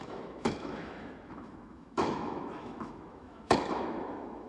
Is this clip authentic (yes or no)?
no